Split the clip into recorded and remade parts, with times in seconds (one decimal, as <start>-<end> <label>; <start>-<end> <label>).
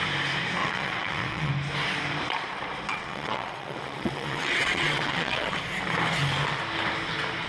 0.0-0.6 recorded; 0.6-1.5 remade; 1.5-2.9 recorded; 2.9-5.6 remade; 5.6-7.5 recorded